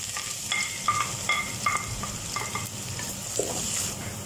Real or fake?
real